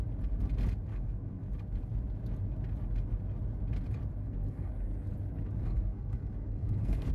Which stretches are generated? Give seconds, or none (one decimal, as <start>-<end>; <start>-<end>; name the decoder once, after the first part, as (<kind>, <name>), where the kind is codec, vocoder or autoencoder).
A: 0.9-1.5 (codec, SNAC); 4.2-4.7; 5.6-7.1